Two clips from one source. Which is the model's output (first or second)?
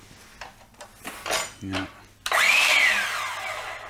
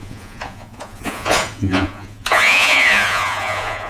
second